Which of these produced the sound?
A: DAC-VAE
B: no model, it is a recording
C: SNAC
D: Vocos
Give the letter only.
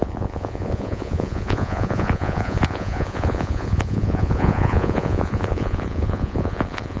D